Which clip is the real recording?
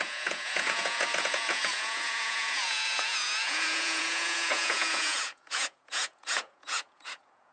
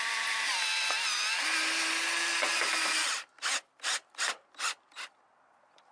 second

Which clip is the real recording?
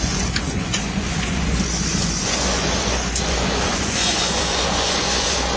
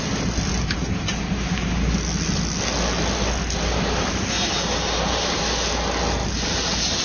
second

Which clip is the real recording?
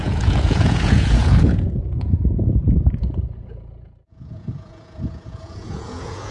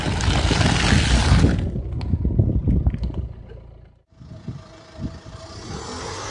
second